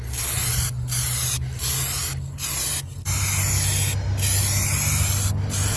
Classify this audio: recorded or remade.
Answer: recorded